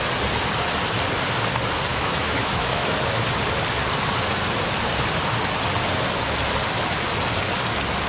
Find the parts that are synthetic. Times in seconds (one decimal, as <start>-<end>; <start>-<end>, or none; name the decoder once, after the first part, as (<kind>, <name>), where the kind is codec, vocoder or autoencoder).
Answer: 1.9-3.2 (autoencoder, DAC-VAE)